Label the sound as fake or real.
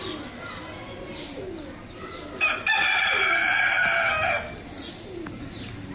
real